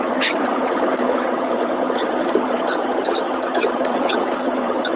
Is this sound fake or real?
fake